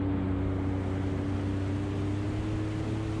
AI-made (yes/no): no